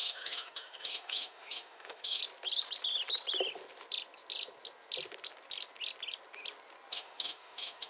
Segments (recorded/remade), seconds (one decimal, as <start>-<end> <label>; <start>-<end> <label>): 0.0-2.2 remade; 2.2-6.9 recorded; 6.9-7.9 remade